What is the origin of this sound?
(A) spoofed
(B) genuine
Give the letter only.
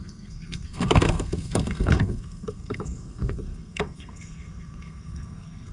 A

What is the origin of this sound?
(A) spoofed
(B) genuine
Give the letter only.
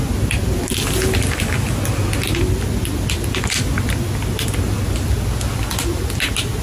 B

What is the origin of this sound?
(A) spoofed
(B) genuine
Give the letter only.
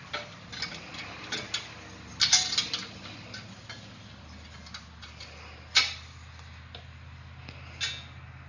B